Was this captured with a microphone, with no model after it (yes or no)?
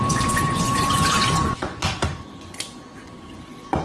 no